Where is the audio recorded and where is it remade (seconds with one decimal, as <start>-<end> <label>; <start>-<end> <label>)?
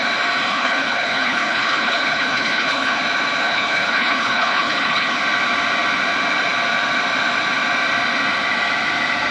0.0-0.5 recorded; 0.5-3.0 remade; 3.0-3.4 recorded; 3.4-5.2 remade; 5.2-9.3 recorded